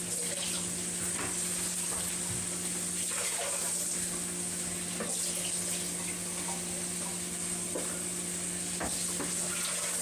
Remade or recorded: recorded